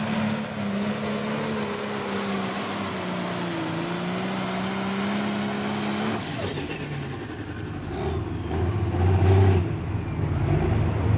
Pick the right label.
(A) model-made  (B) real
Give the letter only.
B